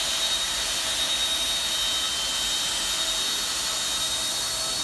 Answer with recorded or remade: recorded